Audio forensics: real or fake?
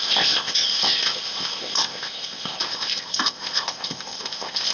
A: fake